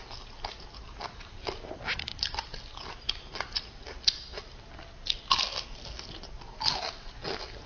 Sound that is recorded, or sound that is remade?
recorded